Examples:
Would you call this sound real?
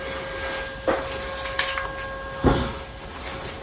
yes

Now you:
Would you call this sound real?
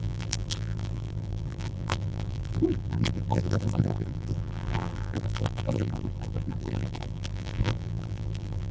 no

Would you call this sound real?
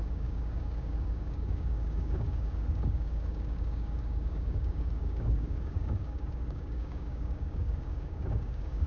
no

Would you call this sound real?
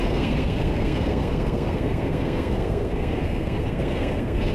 no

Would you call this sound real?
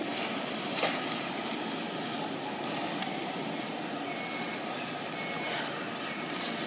yes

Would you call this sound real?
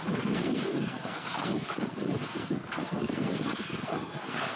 no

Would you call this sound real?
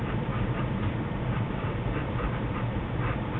no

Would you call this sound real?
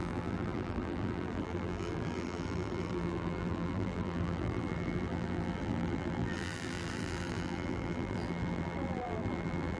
no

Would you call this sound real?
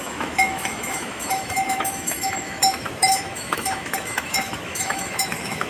no